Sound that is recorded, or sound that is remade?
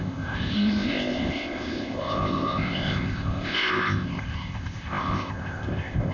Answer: remade